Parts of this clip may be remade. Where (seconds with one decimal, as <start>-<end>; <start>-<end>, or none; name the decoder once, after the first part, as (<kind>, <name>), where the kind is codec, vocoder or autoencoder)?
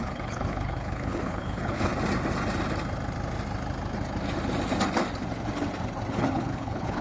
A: 0.0-1.9 (codec, HILCodec); 6.1-7.0